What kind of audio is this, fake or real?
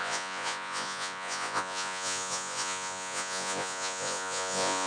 fake